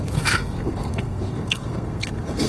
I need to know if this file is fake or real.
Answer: fake